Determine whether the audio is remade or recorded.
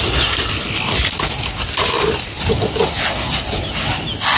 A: recorded